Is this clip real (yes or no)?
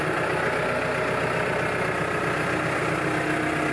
yes